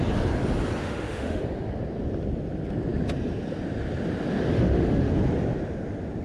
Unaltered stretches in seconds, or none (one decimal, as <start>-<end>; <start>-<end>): 0.0-0.8; 1.4-4.5; 5.1-6.2